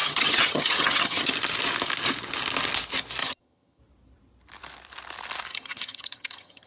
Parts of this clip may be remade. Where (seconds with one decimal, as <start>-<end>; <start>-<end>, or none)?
0.0-1.3; 3.2-3.8; 5.5-6.7